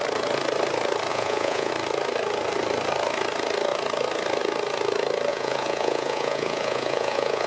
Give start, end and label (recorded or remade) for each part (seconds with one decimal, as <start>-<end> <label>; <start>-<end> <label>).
0.0-1.1 recorded; 1.1-1.7 remade; 1.7-5.3 recorded; 5.3-7.5 remade